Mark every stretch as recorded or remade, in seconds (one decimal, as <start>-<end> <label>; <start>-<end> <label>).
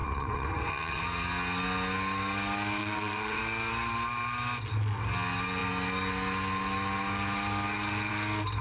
0.0-1.0 remade; 1.0-2.8 recorded; 2.8-3.4 remade; 3.4-8.6 recorded